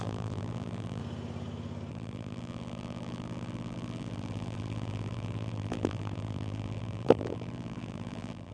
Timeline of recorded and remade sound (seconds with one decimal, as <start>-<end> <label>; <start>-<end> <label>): 0.0-1.0 remade; 1.0-1.9 recorded; 1.9-8.5 remade